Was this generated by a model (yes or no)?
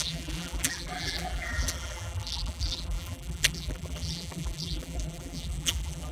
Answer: yes